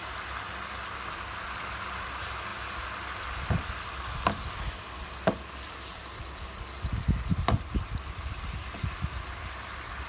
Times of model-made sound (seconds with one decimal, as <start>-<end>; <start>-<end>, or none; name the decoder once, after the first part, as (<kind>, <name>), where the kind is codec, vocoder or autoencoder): none